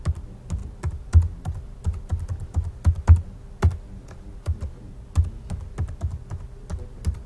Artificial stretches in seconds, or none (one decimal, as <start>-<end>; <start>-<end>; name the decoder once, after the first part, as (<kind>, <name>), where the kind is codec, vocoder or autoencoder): none